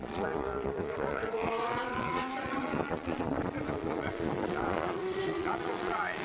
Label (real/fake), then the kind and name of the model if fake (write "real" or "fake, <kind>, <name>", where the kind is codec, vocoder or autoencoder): fake, vocoder, Vocos